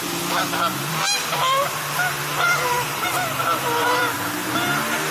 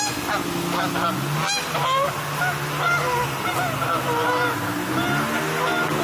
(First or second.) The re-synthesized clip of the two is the first